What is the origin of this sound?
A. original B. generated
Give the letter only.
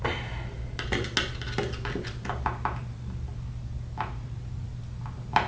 A